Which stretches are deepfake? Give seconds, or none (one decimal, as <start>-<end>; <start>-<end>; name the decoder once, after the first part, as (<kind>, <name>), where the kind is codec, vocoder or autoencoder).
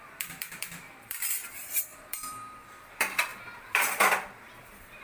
0.0-5.0 (vocoder, BigVGAN v2)